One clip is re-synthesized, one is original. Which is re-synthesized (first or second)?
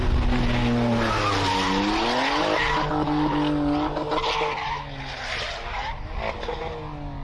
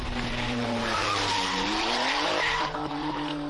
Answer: second